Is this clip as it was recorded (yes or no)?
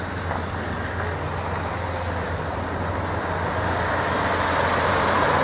yes